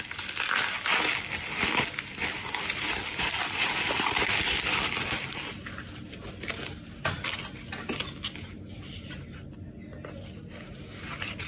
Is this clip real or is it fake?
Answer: real